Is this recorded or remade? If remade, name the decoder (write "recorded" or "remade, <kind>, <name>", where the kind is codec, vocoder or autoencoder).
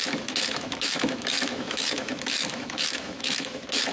remade, autoencoder, DAC-VAE